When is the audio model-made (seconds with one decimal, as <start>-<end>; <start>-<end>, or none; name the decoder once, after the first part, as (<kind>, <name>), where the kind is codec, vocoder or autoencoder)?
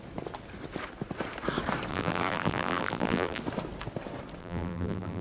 1.9-3.4 (vocoder, BigVGAN v2); 4.4-5.2